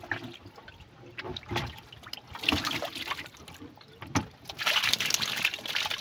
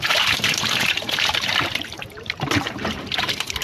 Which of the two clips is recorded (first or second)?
first